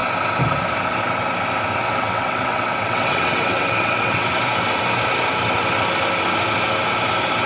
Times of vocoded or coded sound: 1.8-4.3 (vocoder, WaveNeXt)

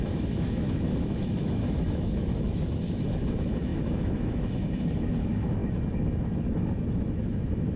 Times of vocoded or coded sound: 0.0-7.8 (autoencoder, DAC-VAE)

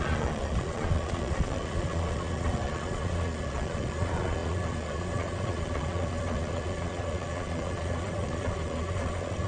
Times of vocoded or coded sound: 0.0-9.5 (vocoder, Vocos)

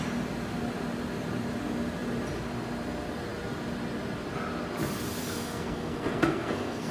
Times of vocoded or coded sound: 5.2-6.9 (codec, SNAC)

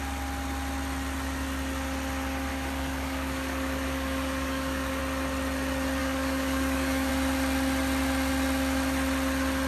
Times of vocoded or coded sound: 2.5-5.0 (codec, DAC); 6.0-7.1

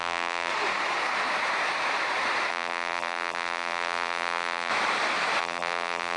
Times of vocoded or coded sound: 0.0-0.5 (vocoder, BigVGAN v2); 2.5-4.7; 5.4-6.2